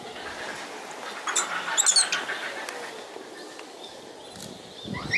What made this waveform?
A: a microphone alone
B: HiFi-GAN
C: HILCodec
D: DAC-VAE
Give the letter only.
A